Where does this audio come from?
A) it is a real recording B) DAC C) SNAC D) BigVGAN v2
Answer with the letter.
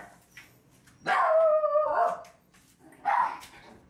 A